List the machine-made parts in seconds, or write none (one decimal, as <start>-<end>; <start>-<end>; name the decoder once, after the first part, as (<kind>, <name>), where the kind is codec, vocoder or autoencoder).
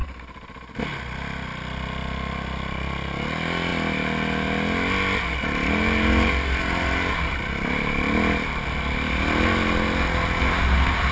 none